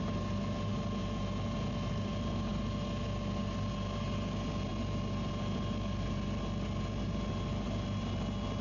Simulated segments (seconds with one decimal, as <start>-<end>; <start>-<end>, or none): none